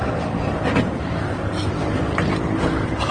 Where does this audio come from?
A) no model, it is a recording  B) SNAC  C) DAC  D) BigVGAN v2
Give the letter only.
A